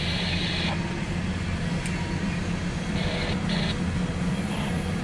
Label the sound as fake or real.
real